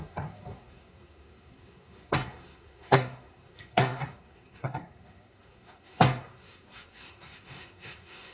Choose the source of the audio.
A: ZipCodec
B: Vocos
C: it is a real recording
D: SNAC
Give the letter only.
D